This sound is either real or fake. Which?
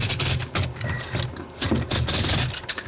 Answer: real